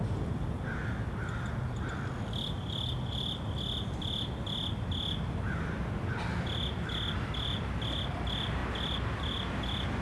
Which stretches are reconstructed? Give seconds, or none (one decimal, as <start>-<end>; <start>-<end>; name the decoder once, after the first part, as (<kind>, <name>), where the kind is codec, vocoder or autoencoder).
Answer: none